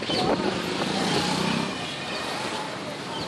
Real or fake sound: real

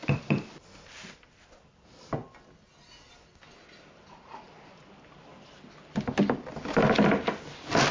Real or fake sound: real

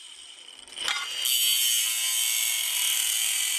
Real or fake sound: real